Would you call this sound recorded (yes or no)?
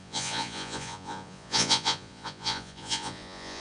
no